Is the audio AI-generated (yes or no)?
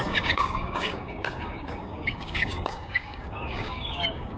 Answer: yes